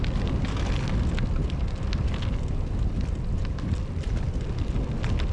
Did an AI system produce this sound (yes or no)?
no